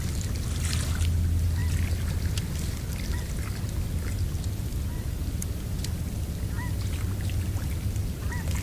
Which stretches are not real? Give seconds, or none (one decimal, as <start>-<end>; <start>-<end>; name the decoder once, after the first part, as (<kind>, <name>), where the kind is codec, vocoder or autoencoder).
none